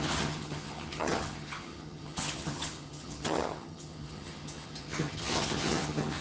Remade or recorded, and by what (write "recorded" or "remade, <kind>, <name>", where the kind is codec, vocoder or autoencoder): remade, vocoder, HiFi-GAN